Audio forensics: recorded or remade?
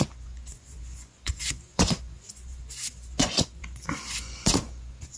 remade